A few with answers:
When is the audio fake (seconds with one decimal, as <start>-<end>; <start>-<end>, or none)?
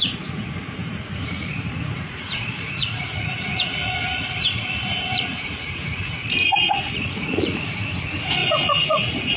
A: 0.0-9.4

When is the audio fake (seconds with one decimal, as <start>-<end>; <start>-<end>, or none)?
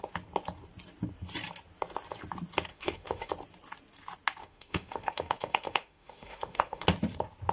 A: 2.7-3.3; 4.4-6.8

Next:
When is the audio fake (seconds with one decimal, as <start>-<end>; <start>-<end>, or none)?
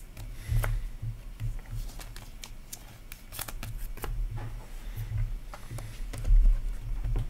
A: none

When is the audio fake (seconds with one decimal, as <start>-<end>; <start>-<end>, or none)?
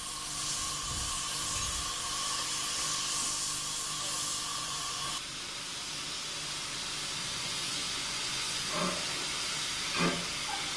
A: 4.5-5.1; 7.2-8.7